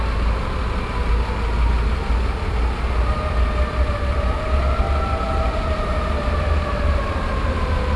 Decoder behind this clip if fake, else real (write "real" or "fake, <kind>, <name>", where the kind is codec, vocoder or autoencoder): real